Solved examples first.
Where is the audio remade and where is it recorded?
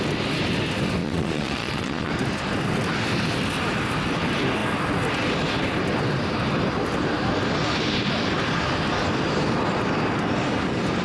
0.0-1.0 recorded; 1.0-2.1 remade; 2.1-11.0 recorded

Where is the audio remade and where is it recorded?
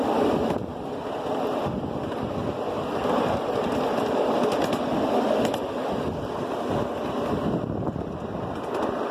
0.0-9.1 recorded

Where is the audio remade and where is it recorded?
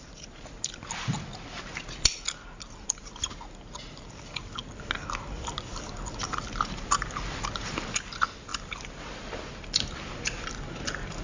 0.0-7.6 recorded; 7.6-8.1 remade; 8.1-8.5 recorded; 8.5-9.0 remade; 9.0-11.2 recorded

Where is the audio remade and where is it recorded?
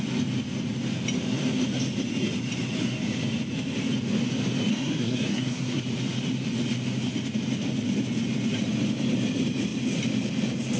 0.0-4.7 recorded; 4.7-5.8 remade; 5.8-10.8 recorded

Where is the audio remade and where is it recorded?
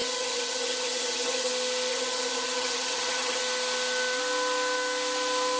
0.0-1.5 remade; 1.5-1.9 recorded; 1.9-3.4 remade; 3.4-5.6 recorded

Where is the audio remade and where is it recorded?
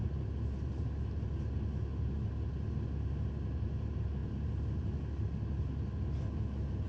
0.0-6.9 recorded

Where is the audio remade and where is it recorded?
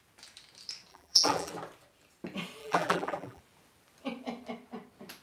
0.0-0.9 recorded; 0.9-1.5 remade; 1.5-2.6 recorded; 2.6-3.4 remade; 3.4-5.2 recorded